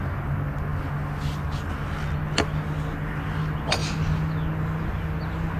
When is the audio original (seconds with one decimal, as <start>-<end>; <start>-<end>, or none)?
0.0-5.6